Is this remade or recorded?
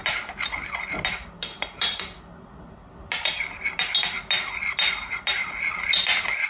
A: recorded